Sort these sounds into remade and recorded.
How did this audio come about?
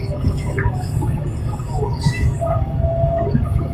remade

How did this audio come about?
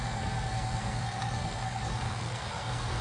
remade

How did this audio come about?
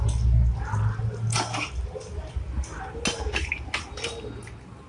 recorded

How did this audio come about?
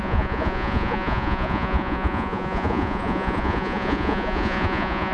remade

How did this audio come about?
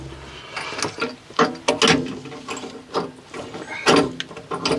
recorded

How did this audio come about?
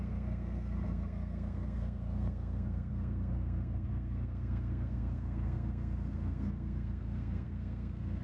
remade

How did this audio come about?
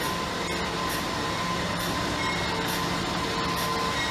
recorded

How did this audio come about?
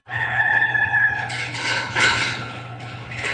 remade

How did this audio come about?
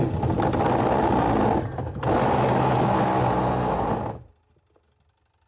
recorded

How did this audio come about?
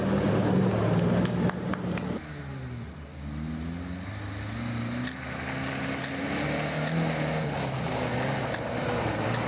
recorded